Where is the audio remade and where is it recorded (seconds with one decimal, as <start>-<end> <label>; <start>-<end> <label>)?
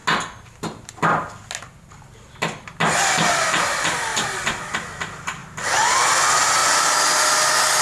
0.0-7.8 recorded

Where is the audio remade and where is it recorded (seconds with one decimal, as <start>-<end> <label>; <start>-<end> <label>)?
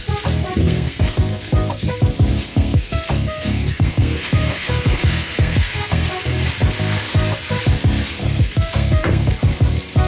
0.0-0.6 recorded; 0.6-1.9 remade; 1.9-2.3 recorded; 2.3-6.1 remade; 6.1-8.2 recorded; 8.2-9.3 remade; 9.3-10.1 recorded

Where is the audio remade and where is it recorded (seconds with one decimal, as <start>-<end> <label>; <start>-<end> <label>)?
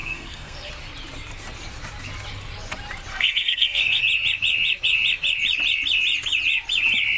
0.0-0.7 remade; 0.7-3.1 recorded; 3.1-4.0 remade; 4.0-7.2 recorded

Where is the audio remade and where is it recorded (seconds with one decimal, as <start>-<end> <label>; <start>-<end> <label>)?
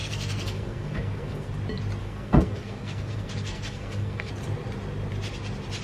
0.0-1.5 remade; 1.5-2.0 recorded; 2.0-4.3 remade; 4.3-5.8 recorded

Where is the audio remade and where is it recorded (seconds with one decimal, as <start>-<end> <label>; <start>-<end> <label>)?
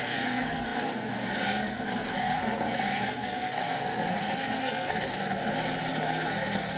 0.0-5.4 remade; 5.4-5.9 recorded; 5.9-6.8 remade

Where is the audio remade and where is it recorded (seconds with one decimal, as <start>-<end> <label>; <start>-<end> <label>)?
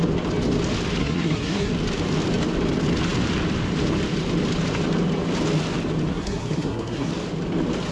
0.0-1.0 recorded; 1.0-1.7 remade; 1.7-6.1 recorded; 6.1-7.1 remade; 7.1-7.9 recorded